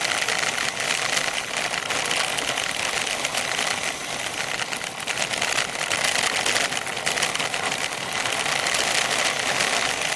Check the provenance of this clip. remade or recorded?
recorded